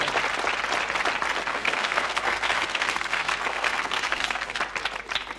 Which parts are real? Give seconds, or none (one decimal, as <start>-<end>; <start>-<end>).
0.0-1.5; 4.6-5.4